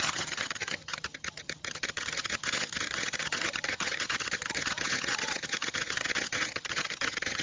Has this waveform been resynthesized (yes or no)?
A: yes